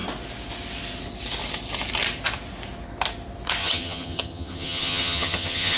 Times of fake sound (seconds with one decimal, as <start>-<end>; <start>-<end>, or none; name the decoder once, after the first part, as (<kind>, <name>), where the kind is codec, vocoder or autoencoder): 3.6-5.8 (vocoder, HiFi-GAN)